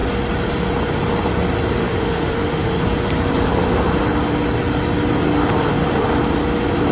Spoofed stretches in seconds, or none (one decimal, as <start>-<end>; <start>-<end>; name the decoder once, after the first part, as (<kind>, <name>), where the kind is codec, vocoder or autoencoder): 1.8-2.8 (autoencoder, DAC-VAE)